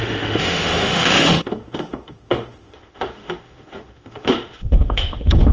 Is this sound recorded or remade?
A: remade